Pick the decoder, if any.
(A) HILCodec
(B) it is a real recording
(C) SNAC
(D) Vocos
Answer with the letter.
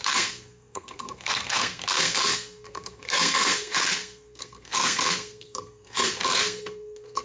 C